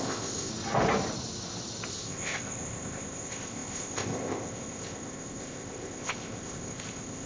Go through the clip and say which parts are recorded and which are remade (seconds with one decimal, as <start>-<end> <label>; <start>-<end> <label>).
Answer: 0.0-0.5 remade; 0.5-1.9 recorded; 1.9-7.3 remade